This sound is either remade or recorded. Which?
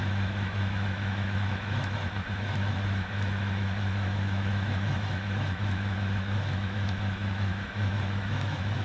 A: remade